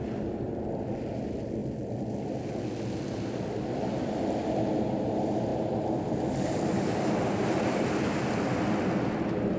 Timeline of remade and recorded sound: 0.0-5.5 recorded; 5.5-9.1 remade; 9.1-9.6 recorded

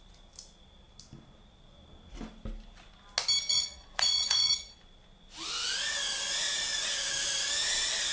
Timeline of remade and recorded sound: 0.0-3.5 recorded; 3.5-4.7 remade; 4.7-8.1 recorded

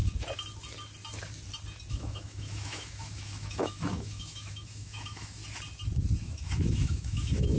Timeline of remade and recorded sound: 0.0-1.9 recorded; 1.9-5.4 remade; 5.4-6.2 recorded; 6.2-7.6 remade